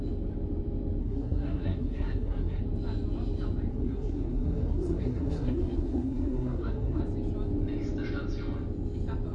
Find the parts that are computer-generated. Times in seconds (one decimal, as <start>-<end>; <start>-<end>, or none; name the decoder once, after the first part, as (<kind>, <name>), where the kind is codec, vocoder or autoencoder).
1.0-2.6 (codec, SNAC); 3.7-7.0